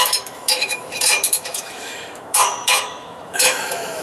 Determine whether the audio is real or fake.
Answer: fake